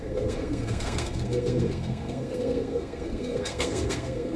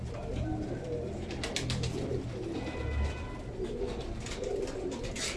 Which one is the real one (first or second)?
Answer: second